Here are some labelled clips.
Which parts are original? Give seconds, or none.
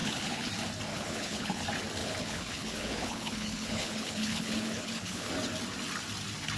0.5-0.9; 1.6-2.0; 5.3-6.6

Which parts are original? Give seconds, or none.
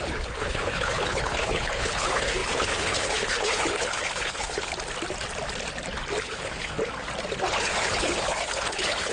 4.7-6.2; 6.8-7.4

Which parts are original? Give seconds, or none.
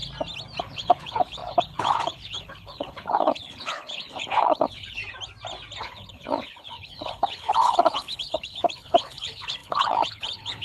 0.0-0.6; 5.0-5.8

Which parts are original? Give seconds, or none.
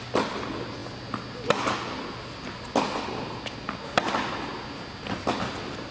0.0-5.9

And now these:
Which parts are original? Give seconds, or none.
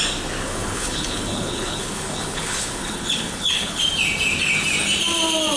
0.0-0.4; 3.8-5.6